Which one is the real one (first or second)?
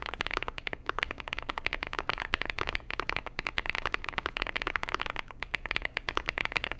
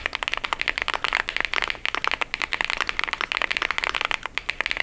second